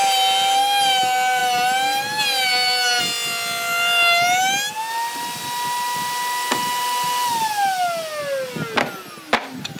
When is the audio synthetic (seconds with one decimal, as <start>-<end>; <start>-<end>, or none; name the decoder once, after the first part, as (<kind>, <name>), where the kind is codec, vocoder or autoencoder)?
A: none